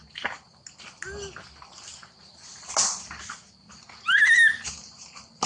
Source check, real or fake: real